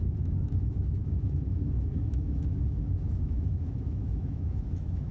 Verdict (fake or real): fake